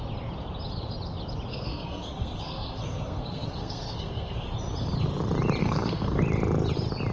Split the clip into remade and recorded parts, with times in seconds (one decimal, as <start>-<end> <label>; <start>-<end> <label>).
0.0-1.5 recorded; 1.5-4.5 remade; 4.5-5.6 recorded; 5.6-6.2 remade; 6.2-7.1 recorded